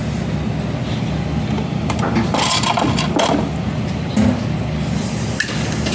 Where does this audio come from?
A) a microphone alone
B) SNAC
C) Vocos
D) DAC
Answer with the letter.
A